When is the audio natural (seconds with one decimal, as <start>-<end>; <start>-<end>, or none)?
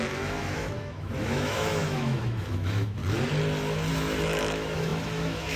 3.0-3.9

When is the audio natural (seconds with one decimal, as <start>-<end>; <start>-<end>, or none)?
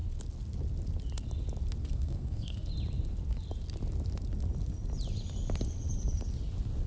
0.0-1.9; 2.7-6.9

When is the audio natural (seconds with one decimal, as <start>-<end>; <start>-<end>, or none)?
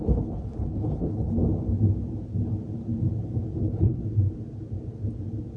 1.4-3.6; 4.0-5.6